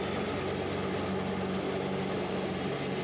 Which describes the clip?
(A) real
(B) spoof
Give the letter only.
A